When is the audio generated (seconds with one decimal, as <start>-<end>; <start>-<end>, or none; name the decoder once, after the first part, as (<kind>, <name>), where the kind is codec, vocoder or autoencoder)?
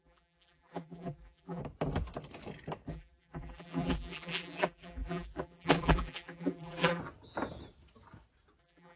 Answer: 0.0-1.6 (vocoder, BigVGAN v2); 2.9-7.0; 8.6-9.0